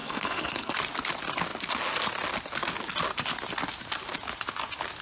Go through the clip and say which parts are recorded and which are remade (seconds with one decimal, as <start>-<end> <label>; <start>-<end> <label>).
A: 0.0-0.7 remade; 0.7-5.0 recorded